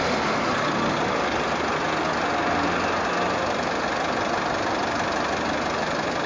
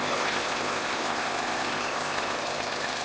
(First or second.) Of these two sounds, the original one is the first